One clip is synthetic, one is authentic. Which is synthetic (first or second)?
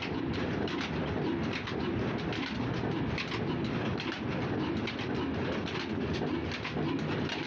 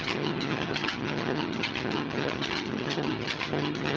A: second